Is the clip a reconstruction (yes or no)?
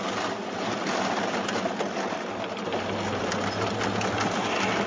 no